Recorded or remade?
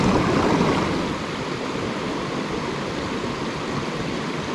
recorded